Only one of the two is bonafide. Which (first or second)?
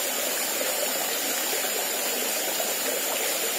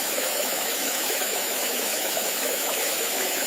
first